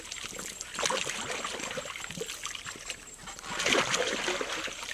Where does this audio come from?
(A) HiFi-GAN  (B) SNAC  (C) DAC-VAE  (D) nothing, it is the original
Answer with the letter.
D